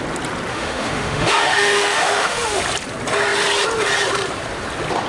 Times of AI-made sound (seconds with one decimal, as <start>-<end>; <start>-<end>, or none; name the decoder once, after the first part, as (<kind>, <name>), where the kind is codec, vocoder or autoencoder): 0.5-2.6 (autoencoder, DAC-VAE)